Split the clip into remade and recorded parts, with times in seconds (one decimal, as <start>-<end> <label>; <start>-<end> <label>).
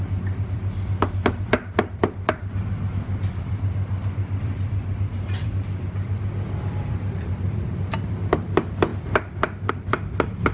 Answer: 0.0-10.5 remade